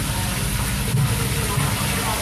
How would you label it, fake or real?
real